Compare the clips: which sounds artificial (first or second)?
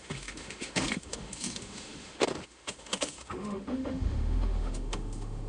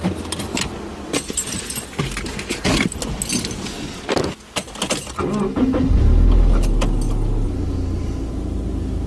first